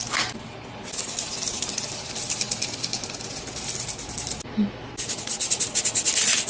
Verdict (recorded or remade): recorded